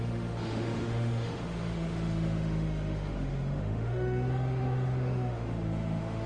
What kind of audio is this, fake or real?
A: fake